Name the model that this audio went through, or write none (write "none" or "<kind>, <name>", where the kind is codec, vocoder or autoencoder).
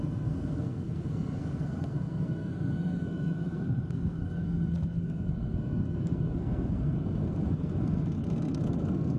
codec, SNAC